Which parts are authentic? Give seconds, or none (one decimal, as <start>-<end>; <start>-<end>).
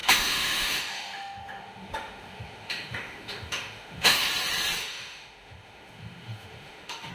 4.3-4.8